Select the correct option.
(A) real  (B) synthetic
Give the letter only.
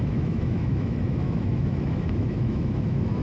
B